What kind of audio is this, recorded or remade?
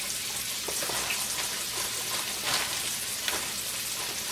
recorded